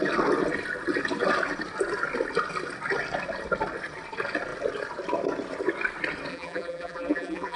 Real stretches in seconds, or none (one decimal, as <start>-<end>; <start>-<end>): 0.0-6.3